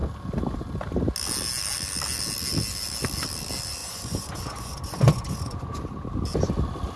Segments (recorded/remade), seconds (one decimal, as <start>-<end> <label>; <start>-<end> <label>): 0.0-3.8 recorded; 3.8-5.8 remade; 5.8-7.0 recorded